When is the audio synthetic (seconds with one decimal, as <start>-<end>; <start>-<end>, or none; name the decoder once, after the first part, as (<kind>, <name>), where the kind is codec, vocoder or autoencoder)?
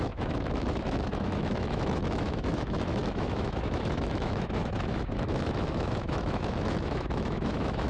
0.0-7.9 (autoencoder, DAC-VAE)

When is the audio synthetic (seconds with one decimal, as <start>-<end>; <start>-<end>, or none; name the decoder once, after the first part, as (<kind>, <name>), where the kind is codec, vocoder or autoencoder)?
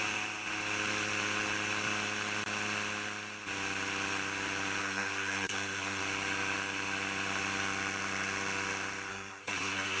4.8-6.0 (codec, SNAC); 9.1-10.0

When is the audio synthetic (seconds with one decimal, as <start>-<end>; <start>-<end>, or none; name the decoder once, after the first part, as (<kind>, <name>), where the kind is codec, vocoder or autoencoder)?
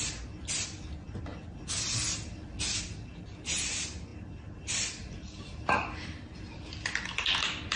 none